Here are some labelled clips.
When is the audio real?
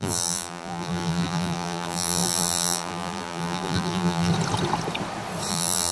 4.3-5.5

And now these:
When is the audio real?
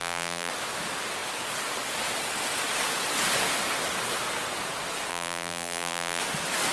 0.5-5.1; 6.2-6.7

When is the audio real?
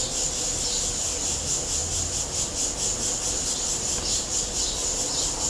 0.0-5.5